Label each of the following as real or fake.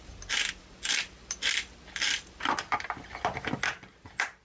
real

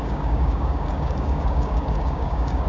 fake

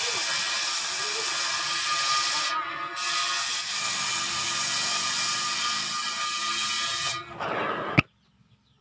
real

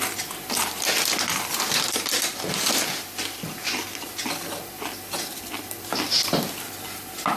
real